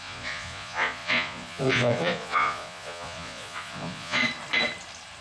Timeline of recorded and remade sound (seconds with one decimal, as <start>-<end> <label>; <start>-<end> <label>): 0.0-4.2 remade; 4.2-5.2 recorded